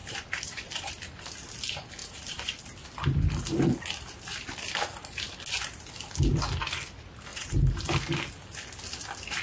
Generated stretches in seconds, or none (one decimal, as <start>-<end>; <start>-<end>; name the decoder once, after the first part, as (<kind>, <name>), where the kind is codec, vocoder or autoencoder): 0.0-0.9 (vocoder, BigVGAN v2); 2.0-2.6; 7.3-7.8